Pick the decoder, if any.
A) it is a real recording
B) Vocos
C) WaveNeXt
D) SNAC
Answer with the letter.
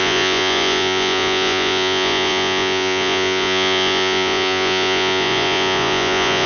B